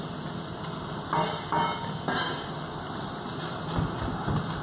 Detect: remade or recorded recorded